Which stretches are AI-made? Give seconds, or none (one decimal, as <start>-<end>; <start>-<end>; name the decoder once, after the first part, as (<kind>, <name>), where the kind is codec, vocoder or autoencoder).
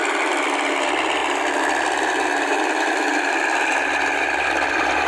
none